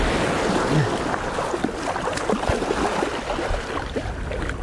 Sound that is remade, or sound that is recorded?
recorded